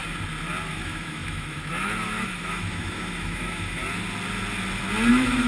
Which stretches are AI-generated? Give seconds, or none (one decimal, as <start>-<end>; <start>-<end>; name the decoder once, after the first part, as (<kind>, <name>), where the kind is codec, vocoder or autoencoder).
0.7-3.8 (autoencoder, DAC-VAE); 5.1-5.5